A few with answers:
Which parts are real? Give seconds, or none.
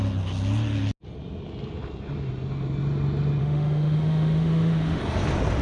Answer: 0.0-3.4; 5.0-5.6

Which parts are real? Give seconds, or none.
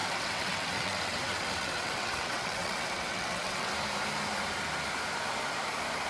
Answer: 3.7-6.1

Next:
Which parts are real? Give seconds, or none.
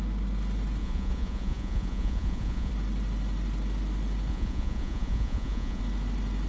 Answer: 0.0-0.8; 2.7-4.3; 5.8-6.5